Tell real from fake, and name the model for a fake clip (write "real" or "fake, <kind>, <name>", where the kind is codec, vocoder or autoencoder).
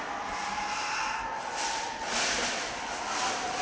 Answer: real